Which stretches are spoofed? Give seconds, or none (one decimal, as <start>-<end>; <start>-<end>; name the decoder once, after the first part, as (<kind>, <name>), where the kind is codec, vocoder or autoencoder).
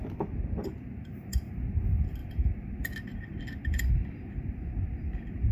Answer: 0.6-1.5 (vocoder, BigVGAN v2); 2.2-5.5